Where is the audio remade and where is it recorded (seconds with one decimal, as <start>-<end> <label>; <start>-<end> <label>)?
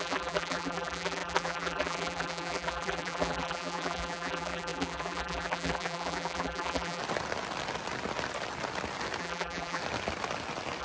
0.0-7.0 remade; 7.0-9.2 recorded; 9.2-9.8 remade; 9.8-10.8 recorded